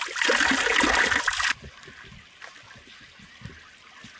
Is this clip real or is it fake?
real